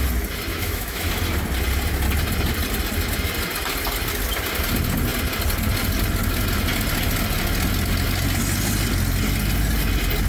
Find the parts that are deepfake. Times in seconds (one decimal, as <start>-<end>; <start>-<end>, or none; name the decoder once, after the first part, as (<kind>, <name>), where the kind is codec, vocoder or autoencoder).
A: 0.5-1.1 (autoencoder, DAC-VAE)